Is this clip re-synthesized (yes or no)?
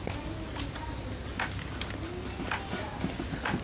no